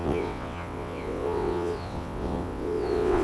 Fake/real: fake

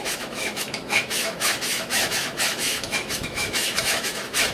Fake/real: fake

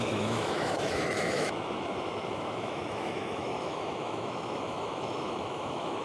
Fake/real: fake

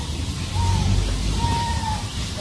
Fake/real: fake